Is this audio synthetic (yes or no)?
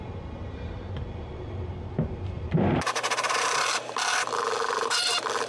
yes